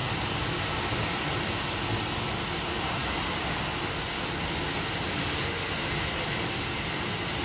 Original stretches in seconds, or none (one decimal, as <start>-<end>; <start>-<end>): 0.0-7.4